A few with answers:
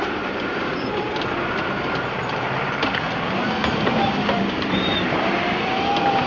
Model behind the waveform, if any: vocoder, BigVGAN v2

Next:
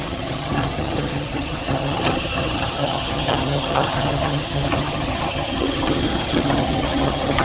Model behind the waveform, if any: vocoder, HiFi-GAN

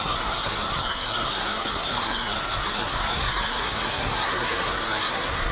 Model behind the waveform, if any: codec, SNAC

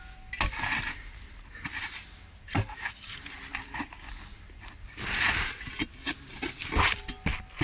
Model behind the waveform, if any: none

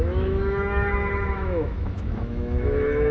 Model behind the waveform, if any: autoencoder, DAC-VAE